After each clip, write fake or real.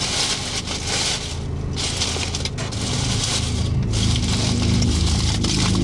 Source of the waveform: real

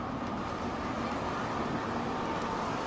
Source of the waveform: real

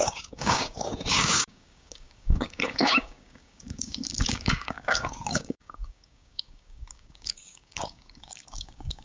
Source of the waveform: fake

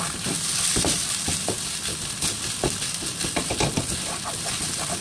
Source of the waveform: real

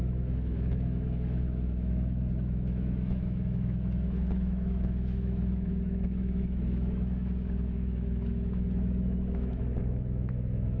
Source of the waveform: fake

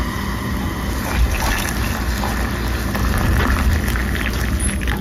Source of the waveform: real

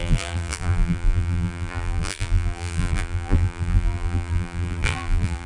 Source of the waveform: fake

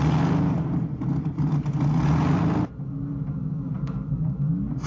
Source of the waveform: real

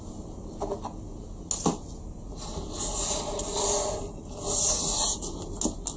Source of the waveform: real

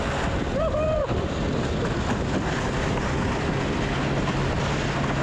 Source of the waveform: real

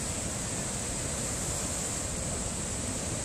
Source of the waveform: real